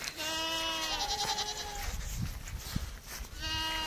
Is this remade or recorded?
recorded